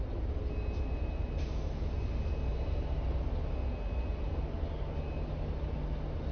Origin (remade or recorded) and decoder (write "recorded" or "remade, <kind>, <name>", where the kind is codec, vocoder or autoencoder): recorded